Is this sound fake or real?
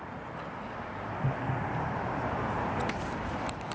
real